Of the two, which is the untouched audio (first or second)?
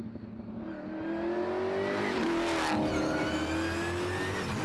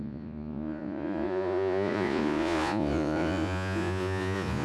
first